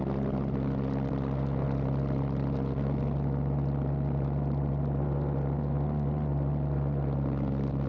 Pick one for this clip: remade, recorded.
recorded